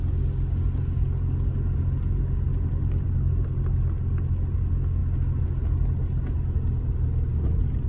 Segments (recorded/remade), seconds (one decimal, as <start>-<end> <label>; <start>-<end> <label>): 0.0-7.9 recorded

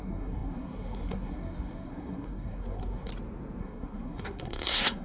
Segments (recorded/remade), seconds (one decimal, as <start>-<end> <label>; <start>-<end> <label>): 0.0-3.1 remade; 3.1-3.6 recorded; 3.6-5.0 remade

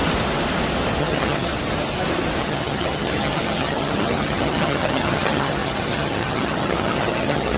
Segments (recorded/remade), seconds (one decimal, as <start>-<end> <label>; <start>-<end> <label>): 0.0-1.0 recorded; 1.0-1.5 remade; 1.5-2.4 recorded; 2.4-7.6 remade

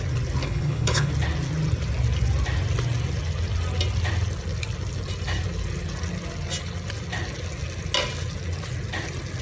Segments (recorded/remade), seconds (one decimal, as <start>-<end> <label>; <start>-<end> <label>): 0.0-0.4 recorded; 0.4-1.1 remade; 1.1-9.4 recorded